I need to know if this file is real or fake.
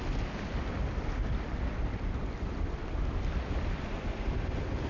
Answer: real